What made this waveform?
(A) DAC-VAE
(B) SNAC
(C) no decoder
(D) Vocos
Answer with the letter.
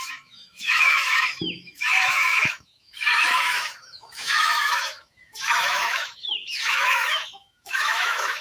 A